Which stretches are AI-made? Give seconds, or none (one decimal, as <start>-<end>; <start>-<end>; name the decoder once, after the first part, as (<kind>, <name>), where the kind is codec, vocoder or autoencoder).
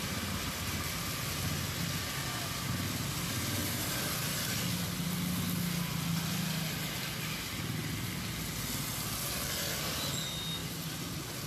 3.6-4.5 (vocoder, BigVGAN v2)